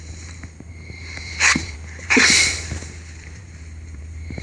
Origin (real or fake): fake